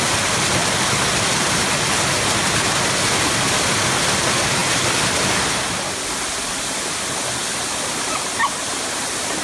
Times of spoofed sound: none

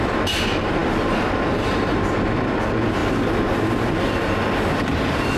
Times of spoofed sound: none